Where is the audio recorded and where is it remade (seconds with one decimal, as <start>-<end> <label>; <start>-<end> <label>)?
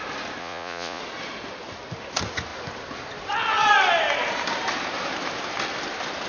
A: 0.0-0.4 recorded; 0.4-1.0 remade; 1.0-6.3 recorded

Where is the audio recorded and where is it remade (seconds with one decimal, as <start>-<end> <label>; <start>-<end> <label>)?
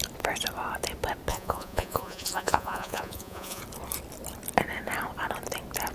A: 0.0-1.3 recorded; 1.3-3.6 remade; 3.6-5.9 recorded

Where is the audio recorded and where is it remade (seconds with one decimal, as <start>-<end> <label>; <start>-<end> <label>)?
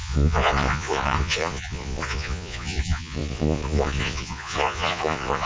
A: 0.0-5.5 remade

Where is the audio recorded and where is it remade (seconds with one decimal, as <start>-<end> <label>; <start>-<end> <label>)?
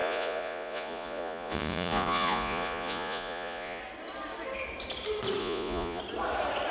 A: 0.0-3.8 remade; 3.8-5.4 recorded; 5.4-6.0 remade; 6.0-6.7 recorded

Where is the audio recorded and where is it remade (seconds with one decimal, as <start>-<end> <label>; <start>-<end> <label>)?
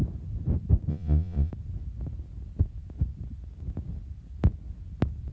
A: 0.0-0.9 recorded; 0.9-1.5 remade; 1.5-5.3 recorded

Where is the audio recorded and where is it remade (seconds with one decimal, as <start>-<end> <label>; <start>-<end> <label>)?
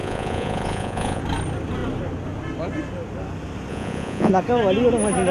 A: 0.0-1.2 remade; 1.2-3.7 recorded; 3.7-4.3 remade; 4.3-5.3 recorded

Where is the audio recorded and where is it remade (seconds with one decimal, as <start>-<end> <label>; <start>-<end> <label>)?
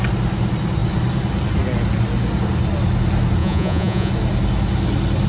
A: 0.0-3.4 recorded; 3.4-4.1 remade; 4.1-5.3 recorded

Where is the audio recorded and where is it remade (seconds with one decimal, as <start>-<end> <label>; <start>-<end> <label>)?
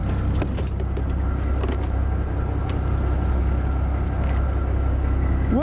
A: 0.0-5.6 recorded